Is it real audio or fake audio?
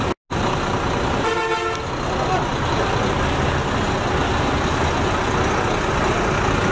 real